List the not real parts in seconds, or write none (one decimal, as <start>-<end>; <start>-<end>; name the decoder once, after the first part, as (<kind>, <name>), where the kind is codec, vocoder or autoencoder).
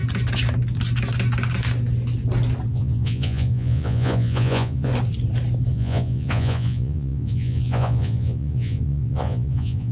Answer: 2.7-4.9 (vocoder, Vocos); 5.7-9.9